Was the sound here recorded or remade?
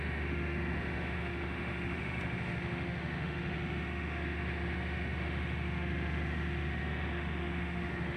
remade